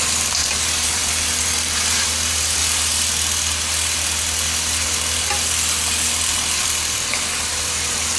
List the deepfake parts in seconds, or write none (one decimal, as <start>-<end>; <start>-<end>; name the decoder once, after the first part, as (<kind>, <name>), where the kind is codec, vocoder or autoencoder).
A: 0.0-2.6 (vocoder, BigVGAN v2); 6.6-8.2